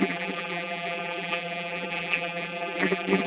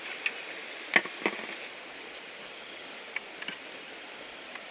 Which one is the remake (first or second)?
first